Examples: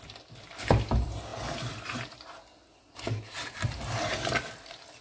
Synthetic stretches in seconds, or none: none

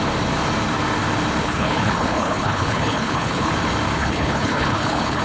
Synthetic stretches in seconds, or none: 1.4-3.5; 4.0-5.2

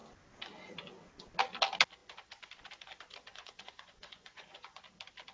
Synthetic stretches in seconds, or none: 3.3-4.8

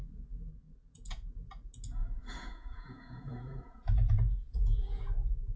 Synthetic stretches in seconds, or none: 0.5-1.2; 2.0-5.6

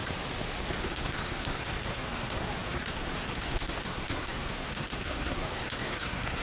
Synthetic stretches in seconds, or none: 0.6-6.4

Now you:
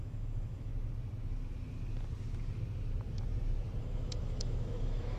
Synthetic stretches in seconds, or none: 0.0-0.7; 3.8-5.2

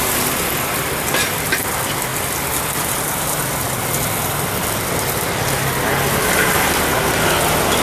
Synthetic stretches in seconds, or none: none